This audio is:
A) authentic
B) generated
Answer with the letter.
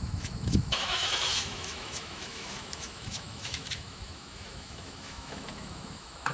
B